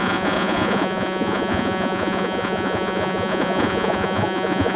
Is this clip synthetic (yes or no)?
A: yes